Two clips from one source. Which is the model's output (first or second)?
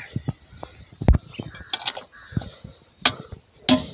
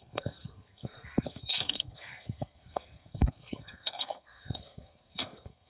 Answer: second